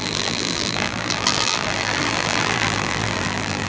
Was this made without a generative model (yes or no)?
no